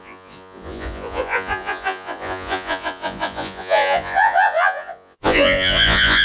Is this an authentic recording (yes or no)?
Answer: no